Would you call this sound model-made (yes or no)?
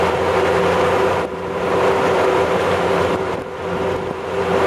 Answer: yes